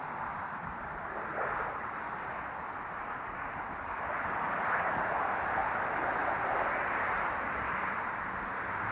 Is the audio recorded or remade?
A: recorded